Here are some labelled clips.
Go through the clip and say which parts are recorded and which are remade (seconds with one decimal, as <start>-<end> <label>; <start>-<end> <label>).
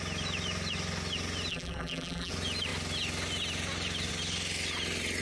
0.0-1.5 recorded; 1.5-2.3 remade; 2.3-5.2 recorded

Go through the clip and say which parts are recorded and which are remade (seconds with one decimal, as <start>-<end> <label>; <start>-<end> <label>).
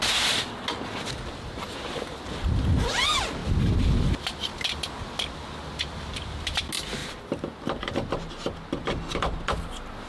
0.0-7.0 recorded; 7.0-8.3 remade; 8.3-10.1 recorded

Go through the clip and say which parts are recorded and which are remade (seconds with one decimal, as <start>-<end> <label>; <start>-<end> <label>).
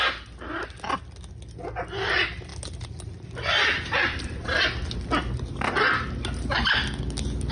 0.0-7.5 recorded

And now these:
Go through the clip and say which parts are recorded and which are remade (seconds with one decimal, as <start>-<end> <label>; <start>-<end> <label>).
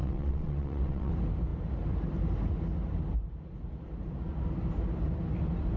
0.0-1.1 remade; 1.1-5.8 recorded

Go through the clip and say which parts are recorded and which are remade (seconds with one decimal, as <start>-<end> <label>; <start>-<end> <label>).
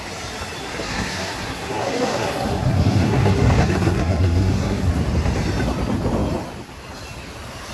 0.0-0.6 recorded; 0.6-4.9 remade; 4.9-7.7 recorded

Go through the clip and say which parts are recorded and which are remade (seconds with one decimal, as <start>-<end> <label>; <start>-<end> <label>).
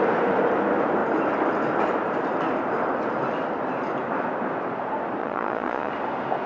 0.0-5.2 recorded; 5.2-5.9 remade; 5.9-6.5 recorded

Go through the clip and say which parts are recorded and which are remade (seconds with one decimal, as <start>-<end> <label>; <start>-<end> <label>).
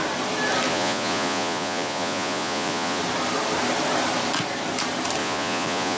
0.0-0.7 recorded; 0.7-3.0 remade; 3.0-5.2 recorded; 5.2-6.0 remade